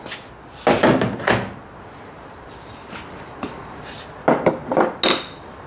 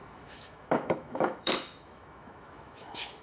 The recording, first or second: first